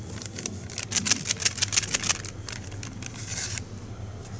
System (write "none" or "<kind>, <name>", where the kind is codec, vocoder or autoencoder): none